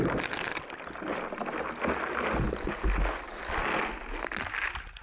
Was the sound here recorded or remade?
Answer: recorded